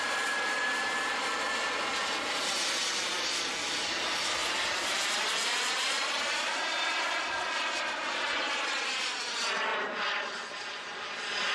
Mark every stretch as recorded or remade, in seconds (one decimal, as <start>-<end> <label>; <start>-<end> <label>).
0.0-4.4 recorded; 4.4-9.2 remade; 9.2-11.5 recorded